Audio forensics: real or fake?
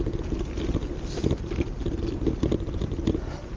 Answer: real